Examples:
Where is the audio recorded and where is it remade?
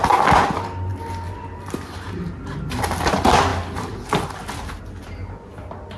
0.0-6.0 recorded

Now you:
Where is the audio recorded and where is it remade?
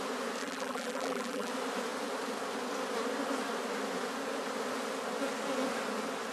0.0-0.4 recorded; 0.4-1.5 remade; 1.5-6.3 recorded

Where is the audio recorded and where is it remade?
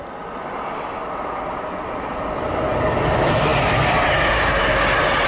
0.0-5.3 recorded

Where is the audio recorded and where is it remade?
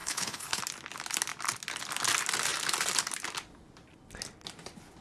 0.0-0.6 remade; 0.6-5.0 recorded